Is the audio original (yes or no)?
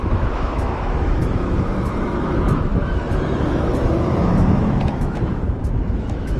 no